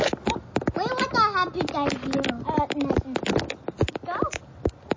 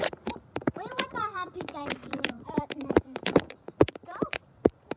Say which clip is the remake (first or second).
second